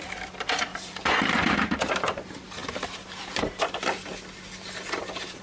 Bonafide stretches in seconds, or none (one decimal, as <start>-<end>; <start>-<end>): 0.0-0.7; 1.7-5.4